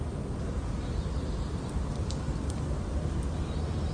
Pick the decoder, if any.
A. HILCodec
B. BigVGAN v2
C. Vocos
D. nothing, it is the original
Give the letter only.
D